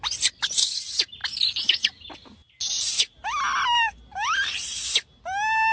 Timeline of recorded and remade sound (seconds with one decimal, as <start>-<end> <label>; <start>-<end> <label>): 0.0-5.7 recorded